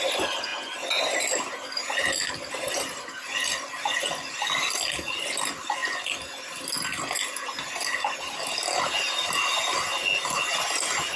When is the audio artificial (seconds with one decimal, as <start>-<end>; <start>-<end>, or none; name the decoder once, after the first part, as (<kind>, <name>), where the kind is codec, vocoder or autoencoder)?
none